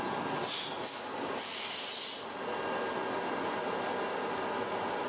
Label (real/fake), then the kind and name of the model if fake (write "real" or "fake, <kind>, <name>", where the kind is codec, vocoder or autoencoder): real